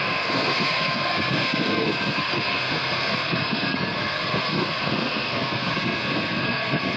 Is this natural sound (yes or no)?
no